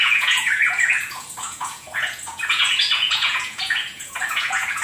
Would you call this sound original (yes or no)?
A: no